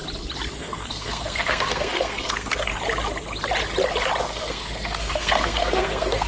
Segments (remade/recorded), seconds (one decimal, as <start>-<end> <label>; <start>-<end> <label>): 0.0-0.6 recorded; 0.6-2.7 remade; 2.7-4.2 recorded; 4.2-6.3 remade